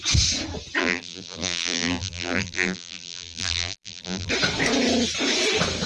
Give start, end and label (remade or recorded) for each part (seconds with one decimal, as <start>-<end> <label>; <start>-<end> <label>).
0.0-0.8 recorded; 0.8-4.3 remade; 4.3-5.9 recorded